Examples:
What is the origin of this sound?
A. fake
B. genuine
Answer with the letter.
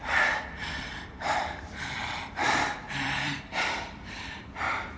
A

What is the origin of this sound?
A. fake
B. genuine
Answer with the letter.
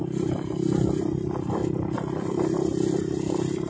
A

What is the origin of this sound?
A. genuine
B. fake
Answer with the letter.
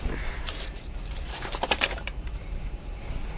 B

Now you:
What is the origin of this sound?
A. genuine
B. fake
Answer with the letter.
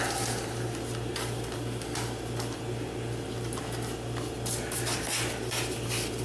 A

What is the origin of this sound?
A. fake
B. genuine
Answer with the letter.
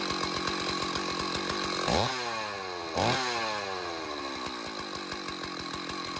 B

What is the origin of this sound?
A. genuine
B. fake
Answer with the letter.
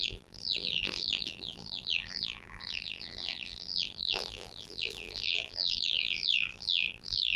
B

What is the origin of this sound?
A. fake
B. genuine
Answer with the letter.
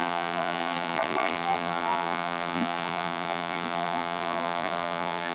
A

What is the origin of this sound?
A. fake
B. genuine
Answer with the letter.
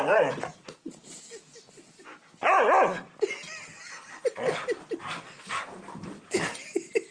B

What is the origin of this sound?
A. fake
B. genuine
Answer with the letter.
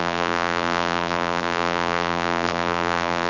A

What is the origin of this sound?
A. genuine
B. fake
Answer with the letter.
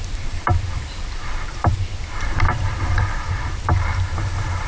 B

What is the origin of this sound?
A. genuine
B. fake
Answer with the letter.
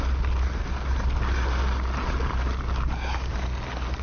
A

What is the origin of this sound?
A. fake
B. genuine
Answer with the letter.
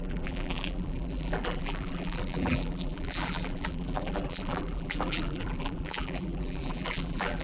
A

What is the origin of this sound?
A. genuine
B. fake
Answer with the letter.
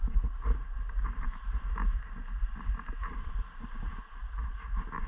B